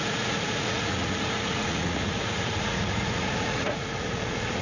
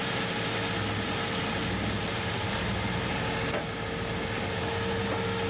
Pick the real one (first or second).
second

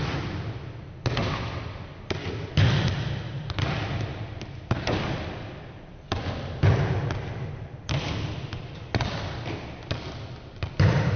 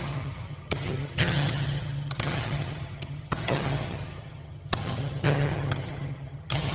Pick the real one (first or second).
first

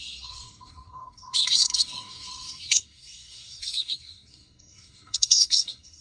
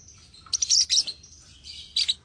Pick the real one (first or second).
second